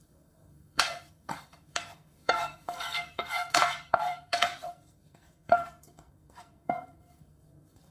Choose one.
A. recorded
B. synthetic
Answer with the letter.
B